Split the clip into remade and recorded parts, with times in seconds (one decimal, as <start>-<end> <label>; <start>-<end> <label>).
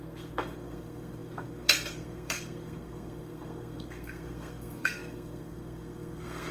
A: 0.0-6.5 remade